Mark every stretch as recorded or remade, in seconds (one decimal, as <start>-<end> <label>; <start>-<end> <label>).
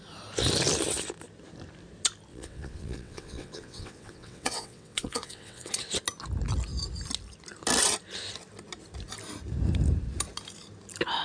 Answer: 0.0-2.3 recorded; 2.3-5.7 remade; 5.7-11.2 recorded